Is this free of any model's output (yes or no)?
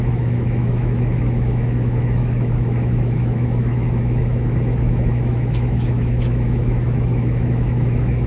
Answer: no